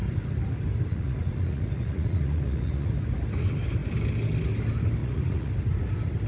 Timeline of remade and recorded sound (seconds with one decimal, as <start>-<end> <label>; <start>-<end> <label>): 0.0-0.9 recorded; 0.9-2.9 remade; 2.9-5.0 recorded; 5.0-5.5 remade; 5.5-6.3 recorded